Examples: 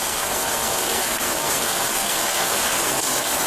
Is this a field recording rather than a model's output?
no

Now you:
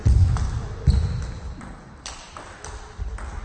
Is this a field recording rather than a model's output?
yes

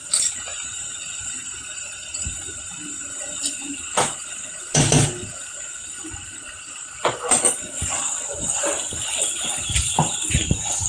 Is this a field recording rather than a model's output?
yes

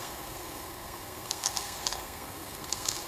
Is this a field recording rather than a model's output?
no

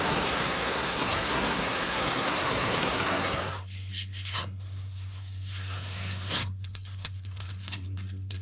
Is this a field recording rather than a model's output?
no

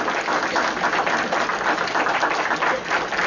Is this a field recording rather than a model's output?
yes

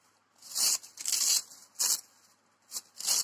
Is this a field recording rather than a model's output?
yes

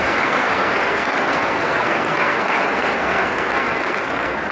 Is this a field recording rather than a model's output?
no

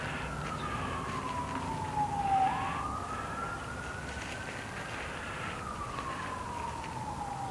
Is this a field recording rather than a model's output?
yes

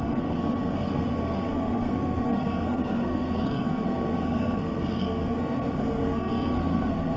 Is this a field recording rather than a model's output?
no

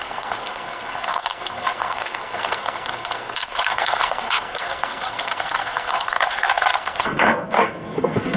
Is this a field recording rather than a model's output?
no